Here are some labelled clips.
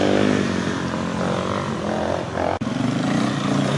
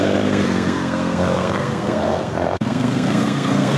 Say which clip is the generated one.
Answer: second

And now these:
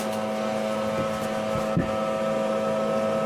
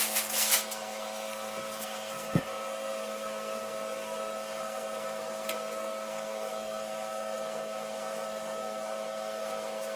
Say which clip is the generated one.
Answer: second